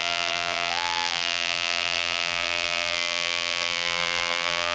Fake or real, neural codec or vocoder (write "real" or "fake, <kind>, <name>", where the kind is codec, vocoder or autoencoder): fake, vocoder, BigVGAN v2